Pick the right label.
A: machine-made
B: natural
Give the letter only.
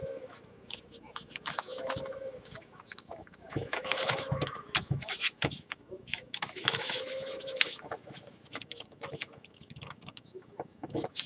A